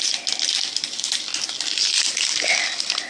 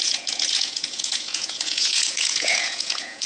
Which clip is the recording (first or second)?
first